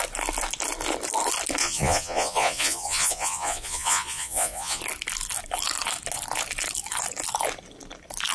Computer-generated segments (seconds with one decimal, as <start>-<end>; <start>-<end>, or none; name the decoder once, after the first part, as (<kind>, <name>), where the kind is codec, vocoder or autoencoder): 1.6-4.8 (vocoder, Vocos)